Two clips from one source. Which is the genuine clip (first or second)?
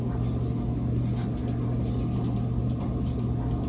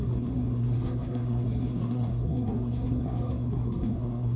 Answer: first